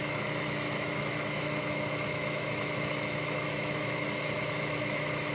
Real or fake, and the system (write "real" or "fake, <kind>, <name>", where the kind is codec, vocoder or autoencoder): fake, autoencoder, DAC-VAE